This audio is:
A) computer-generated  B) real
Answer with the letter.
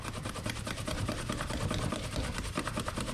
A